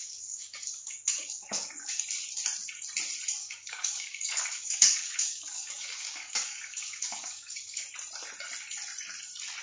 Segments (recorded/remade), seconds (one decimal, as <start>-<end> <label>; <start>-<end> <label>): 0.0-2.0 remade; 2.0-3.4 recorded; 3.4-7.8 remade; 7.8-9.6 recorded